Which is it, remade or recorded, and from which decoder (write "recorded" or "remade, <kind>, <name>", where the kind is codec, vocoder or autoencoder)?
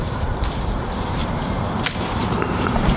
remade, vocoder, BigVGAN v2